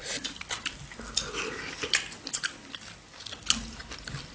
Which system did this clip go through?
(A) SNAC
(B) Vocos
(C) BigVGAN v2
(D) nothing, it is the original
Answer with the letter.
D